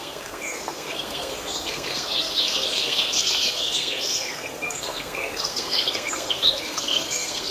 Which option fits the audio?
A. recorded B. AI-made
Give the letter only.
B